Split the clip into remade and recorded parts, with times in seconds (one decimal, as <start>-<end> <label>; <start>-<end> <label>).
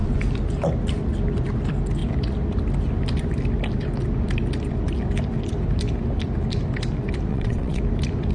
0.0-7.3 recorded; 7.3-7.8 remade; 7.8-8.3 recorded